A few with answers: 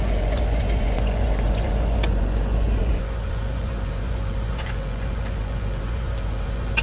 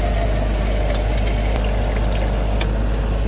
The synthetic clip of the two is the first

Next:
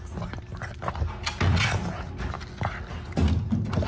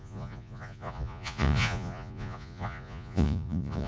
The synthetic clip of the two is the second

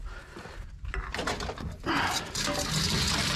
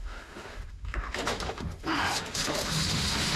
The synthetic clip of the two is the second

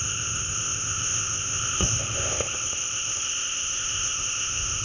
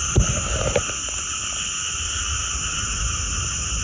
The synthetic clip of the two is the first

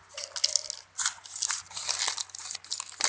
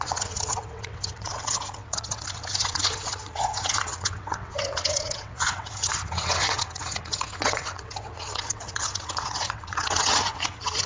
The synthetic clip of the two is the second